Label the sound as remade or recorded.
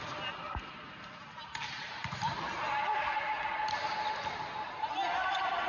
recorded